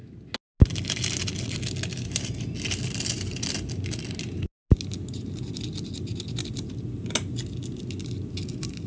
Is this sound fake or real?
real